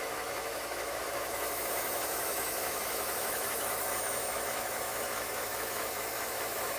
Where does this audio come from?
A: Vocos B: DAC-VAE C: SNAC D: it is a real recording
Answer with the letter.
B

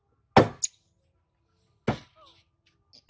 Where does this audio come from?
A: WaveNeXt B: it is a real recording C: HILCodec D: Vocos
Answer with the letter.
B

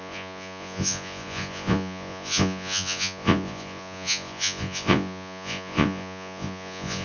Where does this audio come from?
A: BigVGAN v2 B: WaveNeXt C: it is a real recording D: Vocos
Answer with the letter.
D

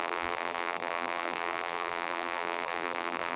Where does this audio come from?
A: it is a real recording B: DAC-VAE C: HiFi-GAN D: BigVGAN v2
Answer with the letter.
D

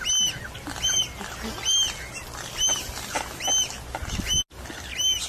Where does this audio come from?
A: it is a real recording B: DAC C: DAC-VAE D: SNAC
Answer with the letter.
A